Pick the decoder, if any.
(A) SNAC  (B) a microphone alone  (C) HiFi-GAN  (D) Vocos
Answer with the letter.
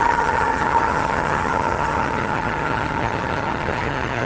C